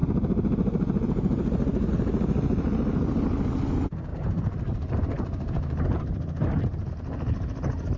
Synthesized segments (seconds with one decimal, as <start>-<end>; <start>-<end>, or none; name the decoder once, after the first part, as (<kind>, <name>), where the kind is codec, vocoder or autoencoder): 0.0-1.9 (vocoder, BigVGAN v2); 4.1-6.9